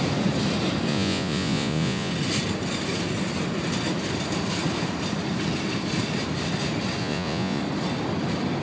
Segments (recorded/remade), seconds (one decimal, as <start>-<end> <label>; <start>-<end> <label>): 0.0-0.9 recorded; 0.9-2.1 remade; 2.1-7.0 recorded; 7.0-7.6 remade; 7.6-8.6 recorded